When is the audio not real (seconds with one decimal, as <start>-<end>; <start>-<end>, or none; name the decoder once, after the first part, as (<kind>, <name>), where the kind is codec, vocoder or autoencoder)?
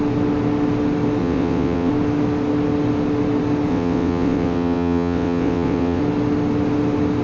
1.2-1.9 (vocoder, WaveNeXt); 3.7-6.0